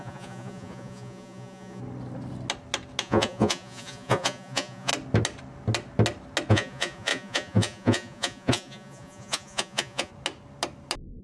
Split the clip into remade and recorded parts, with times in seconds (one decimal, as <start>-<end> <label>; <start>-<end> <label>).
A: 0.0-1.8 remade; 1.8-3.0 recorded; 3.0-4.9 remade; 4.9-6.5 recorded; 6.5-10.1 remade; 10.1-11.2 recorded